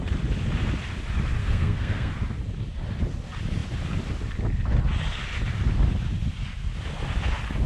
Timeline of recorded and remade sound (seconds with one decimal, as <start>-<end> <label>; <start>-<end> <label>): 0.0-1.4 recorded; 1.4-2.1 remade; 2.1-7.7 recorded